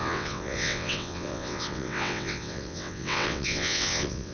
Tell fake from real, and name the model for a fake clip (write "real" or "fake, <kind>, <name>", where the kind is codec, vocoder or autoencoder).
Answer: fake, vocoder, WaveNeXt